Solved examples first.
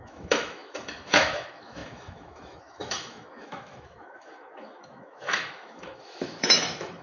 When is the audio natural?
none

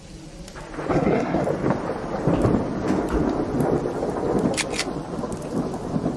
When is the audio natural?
0.0-0.9; 1.4-6.2

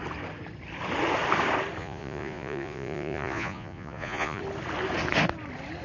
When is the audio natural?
0.0-1.8; 4.4-5.8

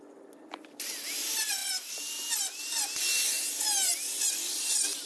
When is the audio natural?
0.0-5.1

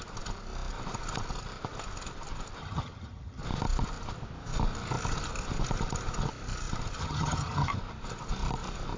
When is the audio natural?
0.0-2.6; 3.4-7.0; 7.7-9.0

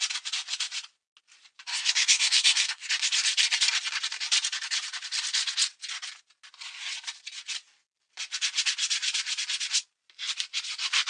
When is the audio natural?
0.0-1.7; 2.9-11.1

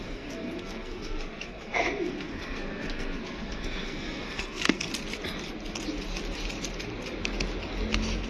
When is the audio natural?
4.9-8.3

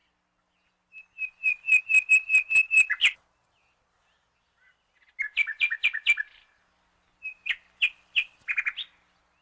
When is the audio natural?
0.0-9.4